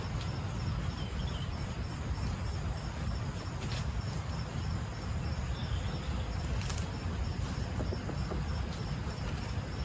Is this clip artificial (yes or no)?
no